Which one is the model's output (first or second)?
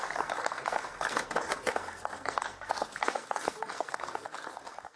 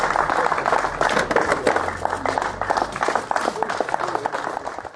first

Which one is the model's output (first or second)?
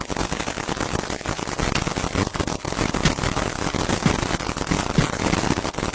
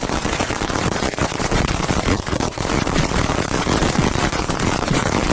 second